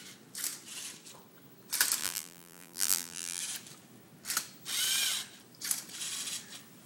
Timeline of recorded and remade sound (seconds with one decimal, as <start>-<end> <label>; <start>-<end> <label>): 0.0-2.0 recorded; 2.0-3.4 remade; 3.4-6.9 recorded